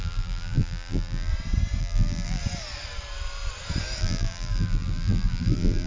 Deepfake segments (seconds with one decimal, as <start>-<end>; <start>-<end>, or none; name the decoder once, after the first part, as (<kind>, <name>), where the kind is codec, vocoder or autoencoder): 0.0-1.3 (vocoder, BigVGAN v2); 1.8-2.4; 4.0-5.9